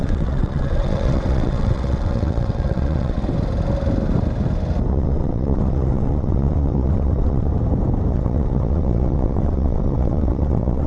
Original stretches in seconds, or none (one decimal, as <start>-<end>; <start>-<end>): 3.2-4.9; 7.5-8.1